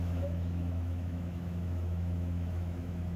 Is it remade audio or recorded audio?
remade